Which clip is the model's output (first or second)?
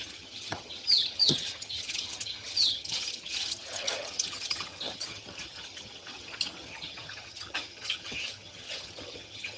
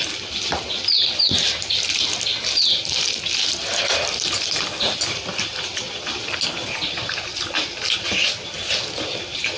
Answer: first